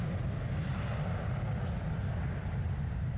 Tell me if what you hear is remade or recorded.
recorded